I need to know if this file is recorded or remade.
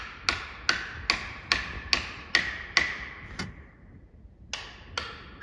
recorded